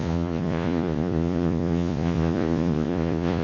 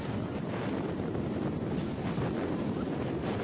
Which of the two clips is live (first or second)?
second